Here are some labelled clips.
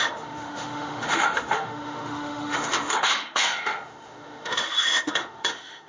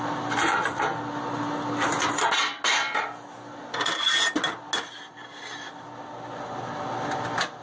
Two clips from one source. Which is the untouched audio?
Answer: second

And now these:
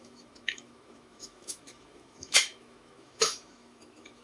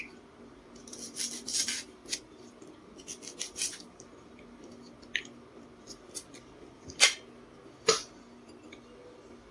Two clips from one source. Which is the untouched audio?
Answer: second